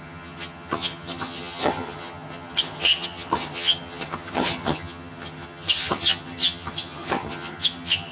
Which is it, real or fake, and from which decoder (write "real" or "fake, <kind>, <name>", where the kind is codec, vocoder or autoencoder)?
fake, vocoder, HiFi-GAN